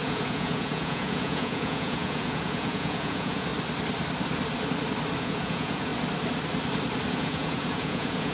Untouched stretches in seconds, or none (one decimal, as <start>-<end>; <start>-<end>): 3.5-5.2; 5.9-7.1